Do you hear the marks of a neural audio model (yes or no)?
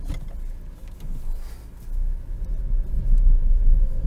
no